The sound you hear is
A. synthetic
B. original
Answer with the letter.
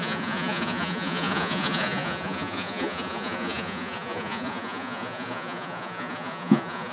A